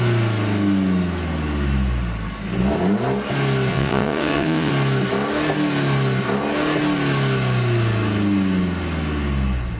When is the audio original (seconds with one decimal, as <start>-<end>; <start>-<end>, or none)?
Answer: 0.0-3.7; 4.7-9.8